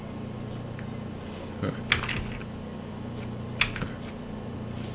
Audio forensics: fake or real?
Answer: real